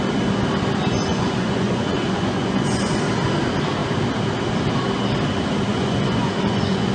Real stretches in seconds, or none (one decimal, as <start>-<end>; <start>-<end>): 0.0-1.1; 3.0-5.7